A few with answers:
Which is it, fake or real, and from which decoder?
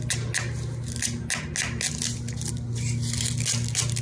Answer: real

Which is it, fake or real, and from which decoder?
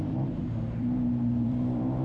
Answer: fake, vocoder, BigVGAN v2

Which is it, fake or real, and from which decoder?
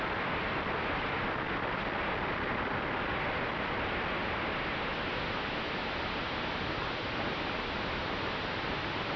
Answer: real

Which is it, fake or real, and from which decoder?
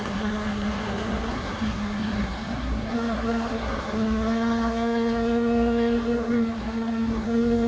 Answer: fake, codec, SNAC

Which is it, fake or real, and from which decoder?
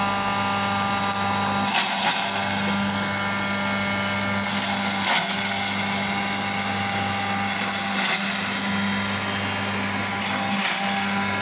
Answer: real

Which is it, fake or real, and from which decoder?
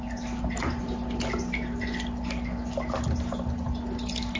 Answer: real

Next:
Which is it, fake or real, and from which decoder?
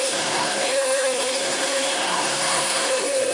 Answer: fake, codec, SNAC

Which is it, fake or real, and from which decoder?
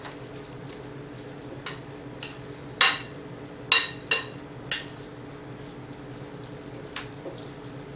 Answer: real